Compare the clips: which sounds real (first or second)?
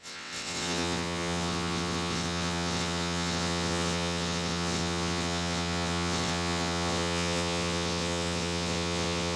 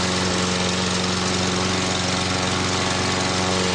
second